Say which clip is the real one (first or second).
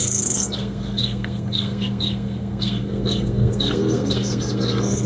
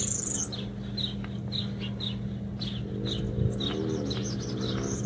second